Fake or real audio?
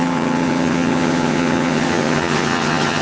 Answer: fake